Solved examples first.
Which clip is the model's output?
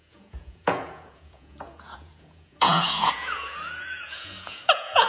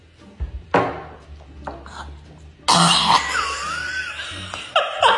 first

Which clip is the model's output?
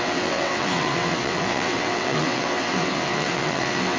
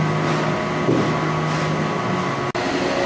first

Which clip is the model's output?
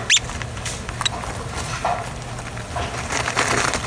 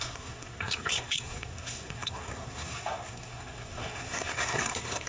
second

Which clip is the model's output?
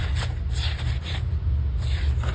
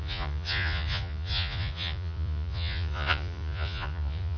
second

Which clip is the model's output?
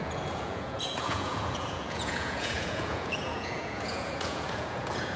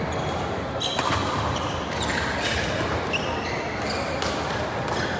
first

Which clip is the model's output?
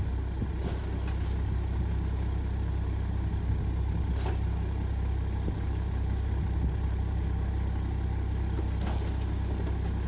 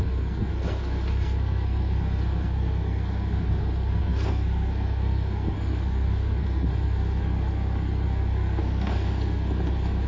second